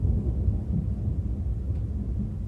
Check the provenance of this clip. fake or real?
real